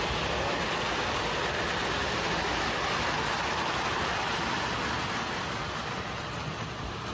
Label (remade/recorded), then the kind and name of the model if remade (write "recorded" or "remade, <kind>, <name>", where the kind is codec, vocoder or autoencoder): recorded